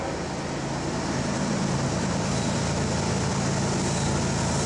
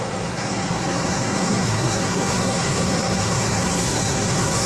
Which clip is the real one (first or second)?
first